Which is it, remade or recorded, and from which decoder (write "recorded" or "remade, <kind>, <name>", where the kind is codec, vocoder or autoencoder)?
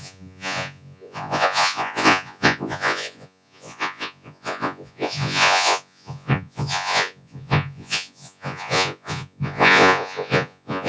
remade, vocoder, Vocos